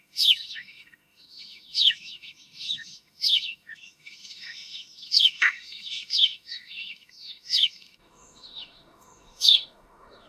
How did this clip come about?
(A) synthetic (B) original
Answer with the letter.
A